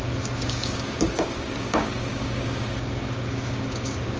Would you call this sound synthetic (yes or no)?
yes